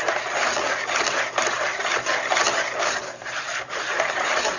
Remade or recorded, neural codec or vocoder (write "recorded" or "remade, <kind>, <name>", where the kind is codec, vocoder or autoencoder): recorded